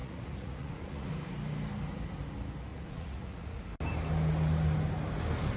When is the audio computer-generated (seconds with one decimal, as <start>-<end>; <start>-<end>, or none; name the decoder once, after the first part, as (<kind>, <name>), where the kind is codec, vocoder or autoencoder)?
0.0-1.1 (vocoder, Vocos); 2.7-3.6